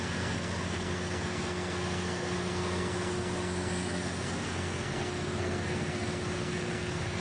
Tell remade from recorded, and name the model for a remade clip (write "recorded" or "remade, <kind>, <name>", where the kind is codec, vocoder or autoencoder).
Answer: remade, codec, SNAC